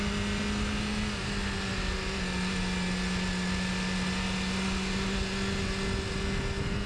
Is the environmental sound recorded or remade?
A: recorded